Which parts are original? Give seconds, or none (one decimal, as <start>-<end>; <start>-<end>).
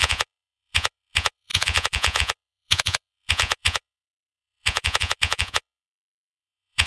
none